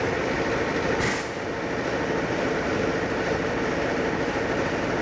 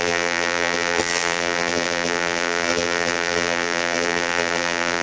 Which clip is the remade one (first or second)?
second